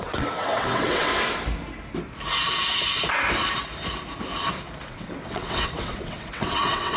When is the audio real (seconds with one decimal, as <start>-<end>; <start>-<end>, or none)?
1.1-4.9